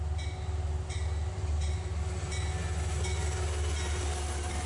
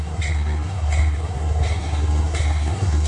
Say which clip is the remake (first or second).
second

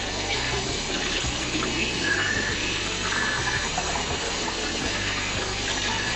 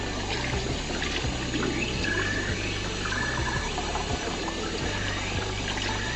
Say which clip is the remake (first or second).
first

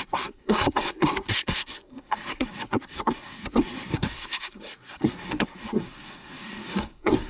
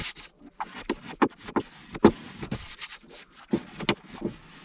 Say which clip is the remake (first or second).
first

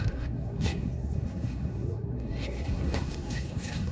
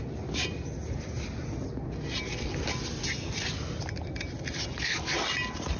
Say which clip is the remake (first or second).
first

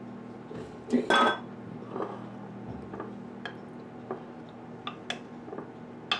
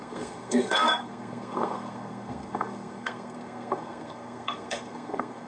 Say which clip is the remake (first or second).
second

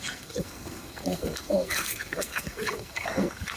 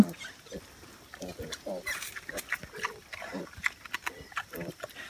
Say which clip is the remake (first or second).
first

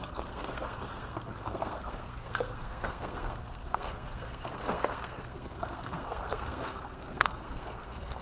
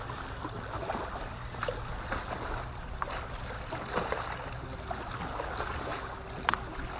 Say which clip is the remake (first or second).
first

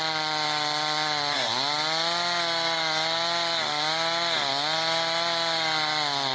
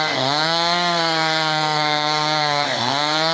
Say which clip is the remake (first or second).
second